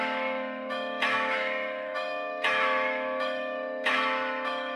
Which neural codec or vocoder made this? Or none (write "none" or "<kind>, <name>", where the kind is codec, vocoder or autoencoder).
autoencoder, DAC-VAE